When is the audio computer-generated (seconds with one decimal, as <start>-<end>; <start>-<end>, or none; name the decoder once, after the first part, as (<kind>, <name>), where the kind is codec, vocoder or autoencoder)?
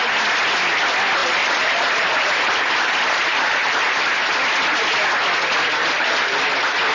1.2-4.3 (vocoder, BigVGAN v2); 5.8-6.4